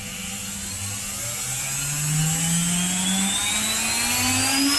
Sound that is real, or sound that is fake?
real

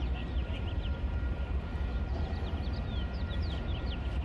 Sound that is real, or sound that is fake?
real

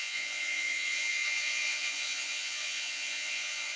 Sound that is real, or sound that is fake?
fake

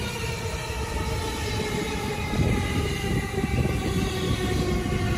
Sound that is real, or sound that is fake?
real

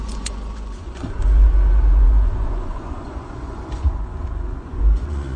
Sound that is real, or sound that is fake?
fake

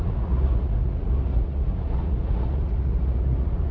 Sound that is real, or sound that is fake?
fake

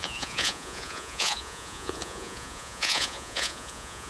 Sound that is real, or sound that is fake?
fake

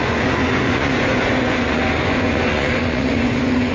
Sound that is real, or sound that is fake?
fake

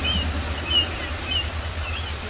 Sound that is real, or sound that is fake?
real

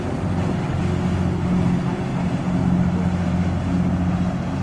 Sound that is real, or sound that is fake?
real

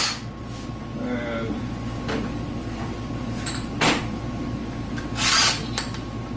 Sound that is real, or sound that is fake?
real